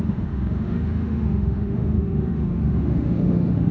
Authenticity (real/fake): fake